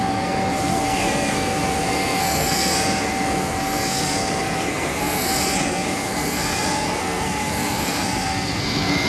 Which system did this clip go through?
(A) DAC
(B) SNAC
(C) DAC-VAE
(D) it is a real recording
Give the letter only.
B